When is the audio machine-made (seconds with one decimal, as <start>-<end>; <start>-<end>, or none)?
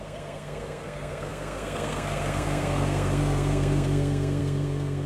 0.0-5.1